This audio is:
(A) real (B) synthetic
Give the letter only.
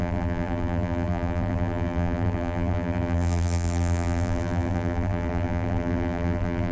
B